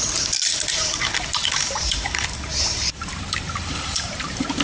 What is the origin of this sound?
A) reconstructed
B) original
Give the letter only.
A